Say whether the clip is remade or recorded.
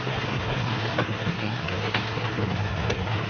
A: remade